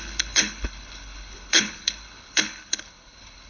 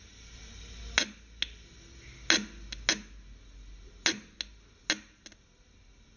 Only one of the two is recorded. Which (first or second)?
second